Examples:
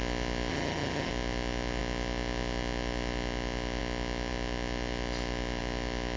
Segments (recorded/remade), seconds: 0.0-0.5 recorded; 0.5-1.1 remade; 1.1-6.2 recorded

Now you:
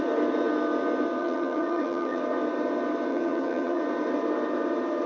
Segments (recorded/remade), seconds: 0.0-1.2 recorded; 1.2-2.2 remade; 2.2-3.1 recorded; 3.1-3.8 remade; 3.8-5.1 recorded